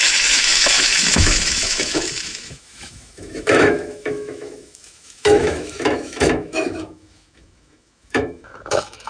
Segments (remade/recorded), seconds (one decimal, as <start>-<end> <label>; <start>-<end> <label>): 0.0-9.1 remade

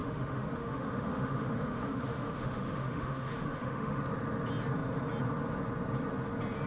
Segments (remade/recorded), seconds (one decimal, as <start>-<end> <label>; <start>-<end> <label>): 0.0-4.0 remade; 4.0-6.7 recorded